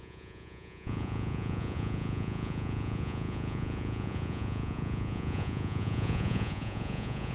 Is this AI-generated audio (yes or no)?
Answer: yes